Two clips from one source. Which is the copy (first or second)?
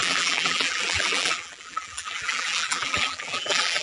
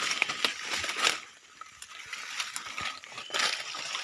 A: first